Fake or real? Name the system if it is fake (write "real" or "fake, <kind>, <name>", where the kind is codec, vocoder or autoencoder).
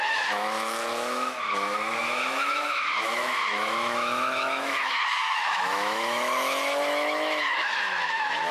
fake, autoencoder, DAC-VAE